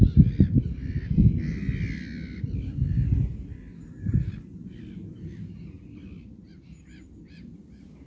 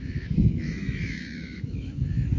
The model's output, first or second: second